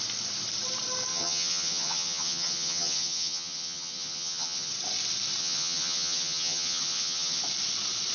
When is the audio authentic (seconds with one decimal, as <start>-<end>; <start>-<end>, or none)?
0.0-1.1; 4.7-5.4; 7.4-8.1